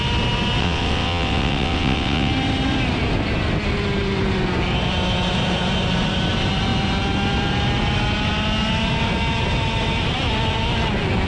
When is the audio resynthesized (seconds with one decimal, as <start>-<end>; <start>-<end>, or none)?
0.6-2.3